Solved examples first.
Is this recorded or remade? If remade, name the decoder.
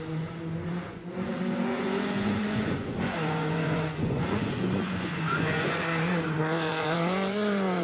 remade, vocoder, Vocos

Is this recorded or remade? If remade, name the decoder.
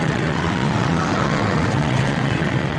remade, vocoder, WaveNeXt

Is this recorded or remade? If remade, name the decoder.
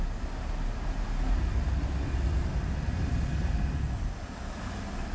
recorded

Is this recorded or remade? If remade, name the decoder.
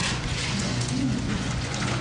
remade, vocoder, Vocos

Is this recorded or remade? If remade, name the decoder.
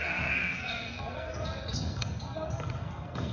remade, codec, SNAC